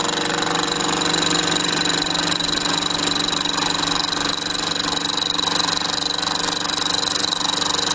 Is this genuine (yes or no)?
yes